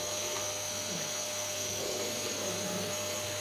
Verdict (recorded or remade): remade